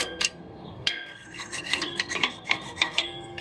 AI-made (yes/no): yes